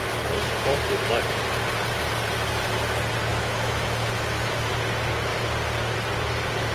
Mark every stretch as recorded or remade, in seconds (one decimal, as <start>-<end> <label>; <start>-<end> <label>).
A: 0.0-3.3 recorded; 3.3-4.7 remade; 4.7-6.7 recorded

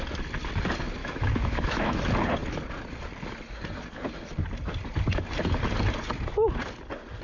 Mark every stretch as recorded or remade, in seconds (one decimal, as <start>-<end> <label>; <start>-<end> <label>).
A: 0.0-1.0 recorded; 1.0-2.0 remade; 2.0-7.2 recorded

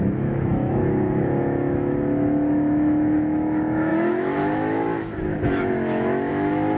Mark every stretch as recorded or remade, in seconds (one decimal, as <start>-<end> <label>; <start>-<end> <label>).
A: 0.0-6.8 remade

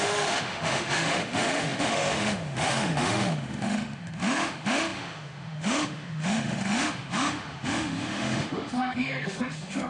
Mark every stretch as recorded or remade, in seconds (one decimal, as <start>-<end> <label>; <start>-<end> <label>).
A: 0.0-9.9 remade

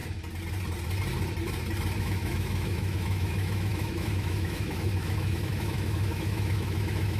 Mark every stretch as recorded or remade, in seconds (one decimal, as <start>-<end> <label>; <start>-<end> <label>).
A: 0.0-2.0 recorded; 2.0-7.2 remade

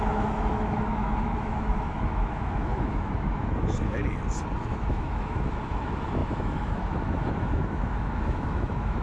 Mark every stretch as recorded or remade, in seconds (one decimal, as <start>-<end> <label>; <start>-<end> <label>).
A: 0.0-4.0 remade; 4.0-4.6 recorded; 4.6-9.0 remade

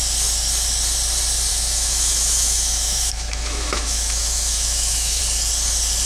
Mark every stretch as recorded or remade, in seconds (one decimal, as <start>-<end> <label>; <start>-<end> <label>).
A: 0.0-1.5 recorded; 1.5-5.2 remade; 5.2-6.1 recorded